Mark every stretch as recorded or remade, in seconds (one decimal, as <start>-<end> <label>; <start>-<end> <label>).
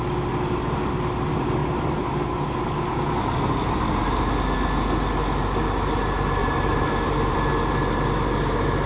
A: 0.0-6.4 recorded; 6.4-7.5 remade; 7.5-8.9 recorded